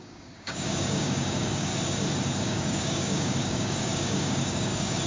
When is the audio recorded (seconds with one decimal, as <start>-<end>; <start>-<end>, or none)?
1.7-2.4